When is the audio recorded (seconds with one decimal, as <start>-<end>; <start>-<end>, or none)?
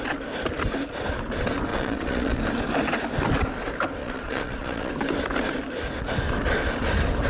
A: 0.0-1.7; 2.4-4.0; 4.9-7.3